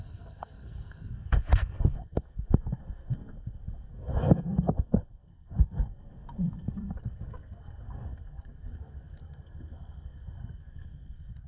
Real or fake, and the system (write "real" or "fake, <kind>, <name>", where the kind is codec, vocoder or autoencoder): fake, codec, SNAC